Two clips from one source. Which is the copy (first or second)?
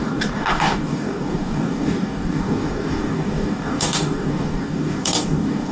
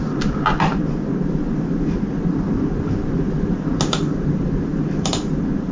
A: first